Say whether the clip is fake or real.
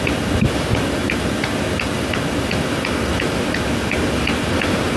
real